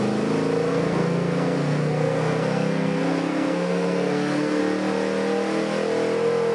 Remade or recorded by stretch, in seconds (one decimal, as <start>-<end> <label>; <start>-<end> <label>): 0.0-0.7 recorded; 0.7-4.6 remade; 4.6-6.5 recorded